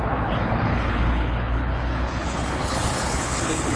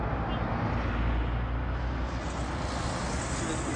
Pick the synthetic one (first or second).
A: first